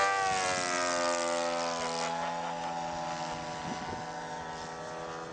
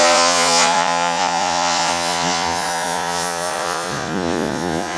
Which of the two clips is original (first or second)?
first